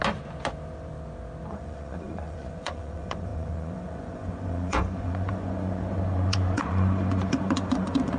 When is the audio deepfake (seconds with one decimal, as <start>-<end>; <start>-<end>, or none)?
1.5-8.2